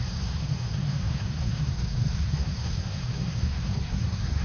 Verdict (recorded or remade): remade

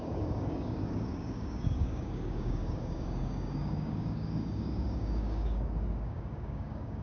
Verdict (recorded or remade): remade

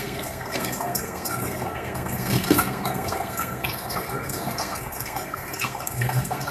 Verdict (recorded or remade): remade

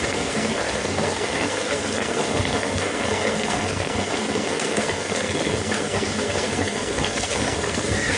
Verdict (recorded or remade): remade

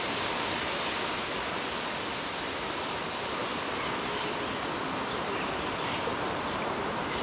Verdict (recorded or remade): recorded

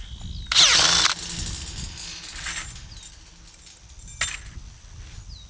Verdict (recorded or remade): recorded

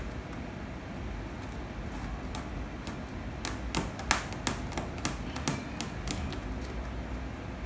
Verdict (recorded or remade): recorded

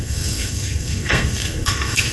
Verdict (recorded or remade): remade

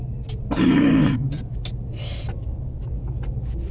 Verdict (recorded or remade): recorded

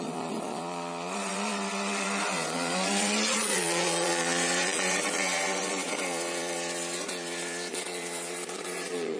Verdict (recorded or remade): remade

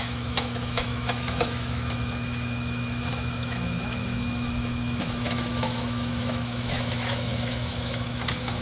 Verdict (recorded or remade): remade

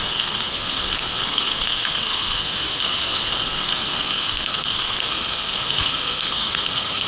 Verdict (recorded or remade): remade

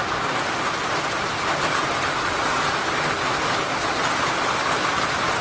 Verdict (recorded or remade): recorded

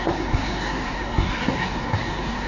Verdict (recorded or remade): remade